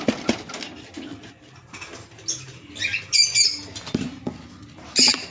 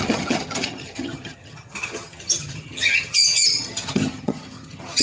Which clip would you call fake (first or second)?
second